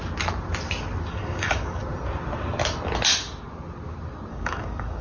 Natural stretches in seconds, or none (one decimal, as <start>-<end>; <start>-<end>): 0.0-1.1; 1.8-4.3